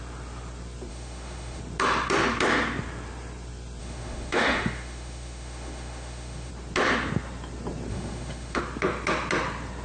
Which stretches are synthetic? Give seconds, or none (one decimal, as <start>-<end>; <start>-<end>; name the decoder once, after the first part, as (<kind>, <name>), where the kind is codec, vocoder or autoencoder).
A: 0.9-1.6 (autoencoder, DAC-VAE); 3.8-6.5; 7.9-8.6